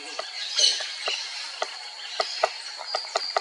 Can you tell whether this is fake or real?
real